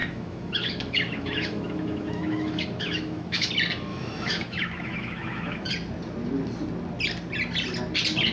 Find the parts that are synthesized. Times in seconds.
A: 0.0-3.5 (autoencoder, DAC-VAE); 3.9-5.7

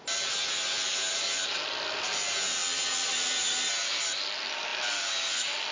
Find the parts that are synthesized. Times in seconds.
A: none